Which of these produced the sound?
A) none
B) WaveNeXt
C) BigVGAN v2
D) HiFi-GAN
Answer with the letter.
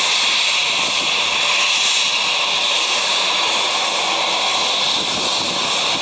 A